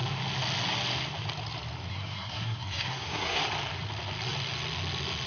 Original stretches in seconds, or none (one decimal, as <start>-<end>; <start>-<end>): 0.0-1.9; 3.4-5.3